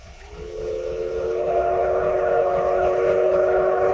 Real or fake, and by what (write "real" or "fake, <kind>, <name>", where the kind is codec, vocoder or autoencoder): fake, codec, HILCodec